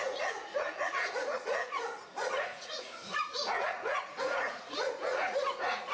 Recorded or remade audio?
remade